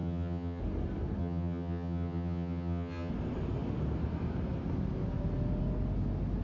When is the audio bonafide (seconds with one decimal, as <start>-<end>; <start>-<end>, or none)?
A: 0.6-1.2; 3.1-6.4